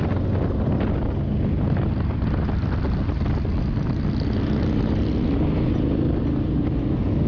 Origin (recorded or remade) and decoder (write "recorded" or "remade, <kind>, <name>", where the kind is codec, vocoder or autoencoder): recorded